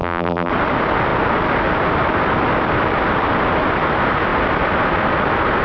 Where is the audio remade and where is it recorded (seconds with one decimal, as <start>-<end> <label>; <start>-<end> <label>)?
0.0-0.5 remade; 0.5-5.6 recorded